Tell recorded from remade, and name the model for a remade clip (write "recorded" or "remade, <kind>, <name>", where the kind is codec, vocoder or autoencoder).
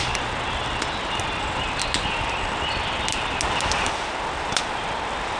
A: recorded